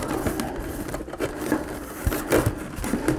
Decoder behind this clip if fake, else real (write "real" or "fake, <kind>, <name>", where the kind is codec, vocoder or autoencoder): real